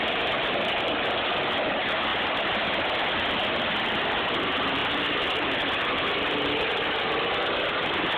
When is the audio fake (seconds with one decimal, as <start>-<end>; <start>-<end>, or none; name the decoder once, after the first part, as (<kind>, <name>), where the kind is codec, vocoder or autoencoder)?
none